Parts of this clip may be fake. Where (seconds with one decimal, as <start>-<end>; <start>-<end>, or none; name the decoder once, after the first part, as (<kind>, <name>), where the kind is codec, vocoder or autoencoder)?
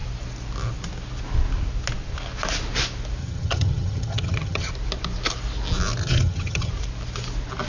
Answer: 3.2-4.7 (vocoder, HiFi-GAN); 6.0-6.7